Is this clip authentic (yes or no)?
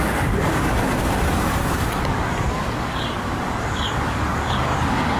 no